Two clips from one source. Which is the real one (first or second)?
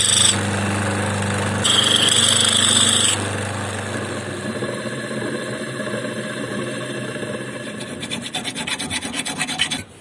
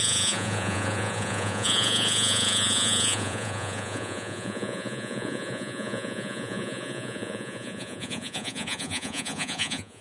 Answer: first